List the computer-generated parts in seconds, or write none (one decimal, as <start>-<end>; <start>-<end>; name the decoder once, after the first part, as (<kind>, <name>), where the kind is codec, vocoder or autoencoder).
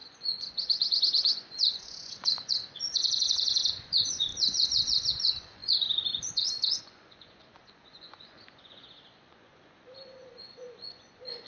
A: 0.0-11.5 (vocoder, Vocos)